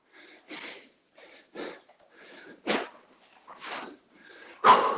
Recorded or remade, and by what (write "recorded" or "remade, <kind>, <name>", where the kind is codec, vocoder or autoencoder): recorded